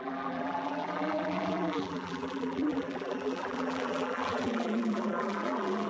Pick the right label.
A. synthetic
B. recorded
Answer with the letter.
A